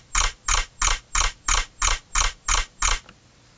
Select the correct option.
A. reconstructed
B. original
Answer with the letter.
B